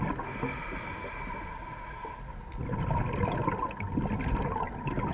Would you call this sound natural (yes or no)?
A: yes